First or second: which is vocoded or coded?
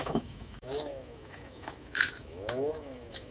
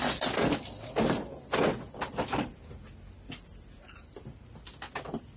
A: first